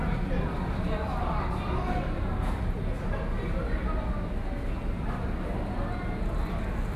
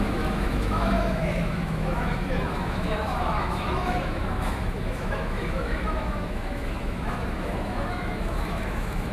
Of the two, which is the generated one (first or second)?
second